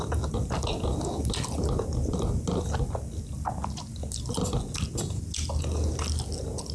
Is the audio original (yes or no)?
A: yes